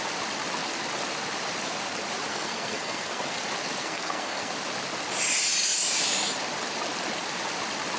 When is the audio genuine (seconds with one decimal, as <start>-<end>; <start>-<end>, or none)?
0.0-2.3; 3.4-3.8; 4.5-8.0

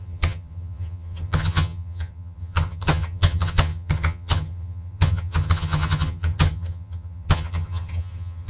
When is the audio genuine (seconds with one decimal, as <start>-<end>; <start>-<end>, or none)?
none

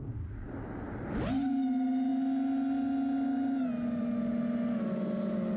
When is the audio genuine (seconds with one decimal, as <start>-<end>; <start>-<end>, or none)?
0.0-5.6

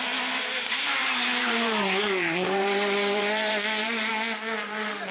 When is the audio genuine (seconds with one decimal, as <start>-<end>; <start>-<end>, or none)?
0.0-1.0; 4.1-5.1

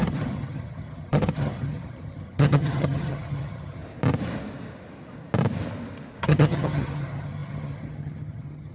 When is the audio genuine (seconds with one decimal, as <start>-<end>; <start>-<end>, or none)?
3.8-6.2

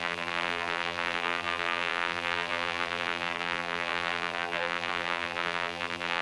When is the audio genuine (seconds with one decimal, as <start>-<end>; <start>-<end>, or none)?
none

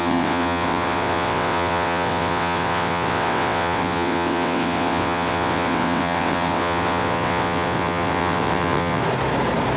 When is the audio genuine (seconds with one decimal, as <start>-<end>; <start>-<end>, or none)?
9.0-9.8